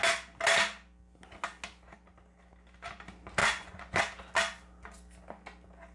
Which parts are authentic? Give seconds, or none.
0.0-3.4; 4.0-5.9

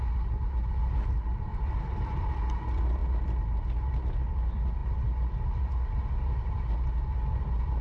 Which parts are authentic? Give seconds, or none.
0.0-1.5; 2.4-7.8

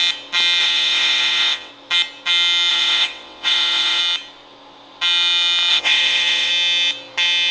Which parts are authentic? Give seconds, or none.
0.0-0.6; 1.7-2.7; 4.0-5.7; 6.5-7.5